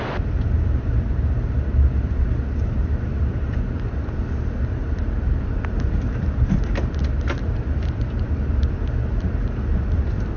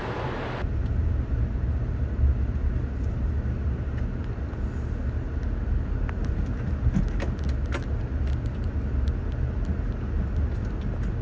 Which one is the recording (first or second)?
second